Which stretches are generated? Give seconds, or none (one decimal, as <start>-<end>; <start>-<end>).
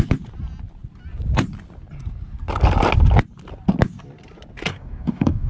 4.7-5.5